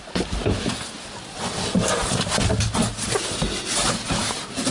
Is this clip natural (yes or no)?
yes